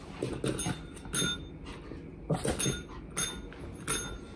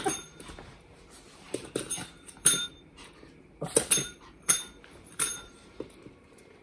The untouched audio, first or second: first